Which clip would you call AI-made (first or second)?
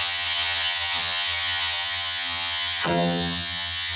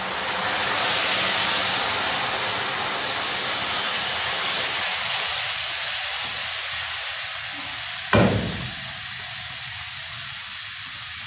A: first